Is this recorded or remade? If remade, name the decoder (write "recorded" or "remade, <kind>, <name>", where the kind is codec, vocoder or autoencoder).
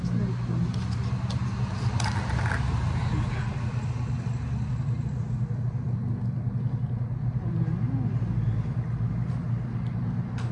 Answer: recorded